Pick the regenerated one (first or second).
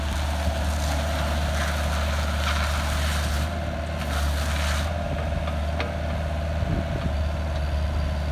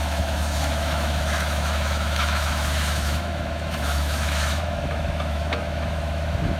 second